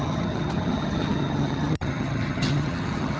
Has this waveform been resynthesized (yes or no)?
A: yes